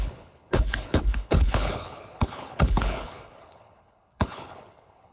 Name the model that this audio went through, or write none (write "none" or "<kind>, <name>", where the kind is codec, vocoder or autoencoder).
codec, HILCodec